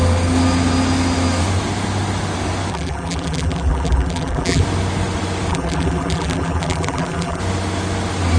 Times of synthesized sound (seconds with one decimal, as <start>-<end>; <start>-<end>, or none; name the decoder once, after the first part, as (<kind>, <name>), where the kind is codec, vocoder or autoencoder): 2.7-4.6 (vocoder, BigVGAN v2); 5.5-7.4